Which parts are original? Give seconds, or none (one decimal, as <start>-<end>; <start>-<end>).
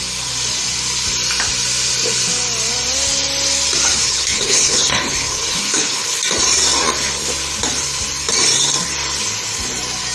0.0-3.9; 6.2-10.1